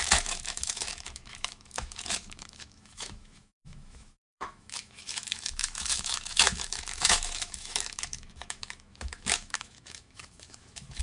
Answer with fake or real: fake